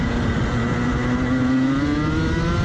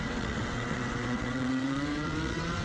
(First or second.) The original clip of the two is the first